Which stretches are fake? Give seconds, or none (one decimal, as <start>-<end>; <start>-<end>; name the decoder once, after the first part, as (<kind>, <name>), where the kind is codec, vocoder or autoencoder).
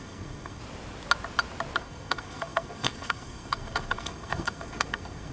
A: 0.0-0.6 (codec, SNAC); 1.8-5.3